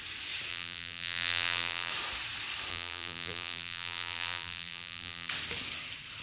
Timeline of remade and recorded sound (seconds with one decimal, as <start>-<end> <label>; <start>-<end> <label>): 0.0-0.5 recorded; 0.5-1.9 remade; 1.9-2.7 recorded; 2.7-5.3 remade; 5.3-6.2 recorded